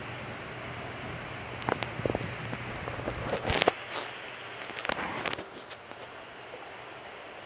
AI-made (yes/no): no